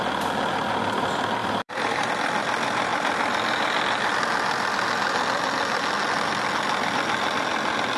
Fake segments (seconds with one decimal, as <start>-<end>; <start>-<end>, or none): 1.4-2.1